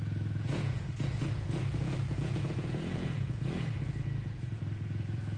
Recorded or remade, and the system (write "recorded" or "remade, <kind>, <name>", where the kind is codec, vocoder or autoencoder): remade, vocoder, Vocos